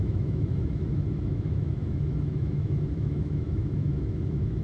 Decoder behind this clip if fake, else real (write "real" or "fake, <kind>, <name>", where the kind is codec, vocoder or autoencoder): fake, autoencoder, DAC-VAE